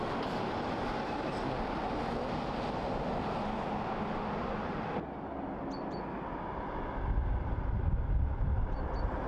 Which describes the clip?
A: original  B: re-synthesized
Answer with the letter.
A